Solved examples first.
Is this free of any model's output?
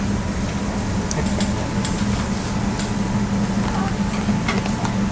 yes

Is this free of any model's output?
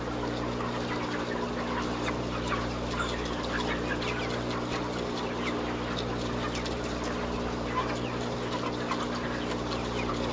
yes